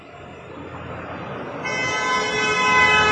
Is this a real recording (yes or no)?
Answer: yes